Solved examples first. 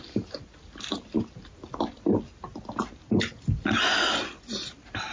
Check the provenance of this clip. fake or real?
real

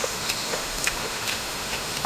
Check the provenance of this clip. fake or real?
fake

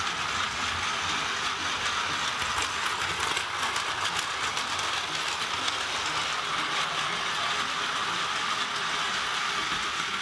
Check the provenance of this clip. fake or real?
real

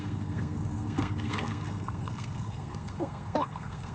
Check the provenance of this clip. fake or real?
fake